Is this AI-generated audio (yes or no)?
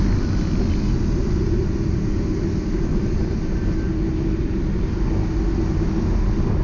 no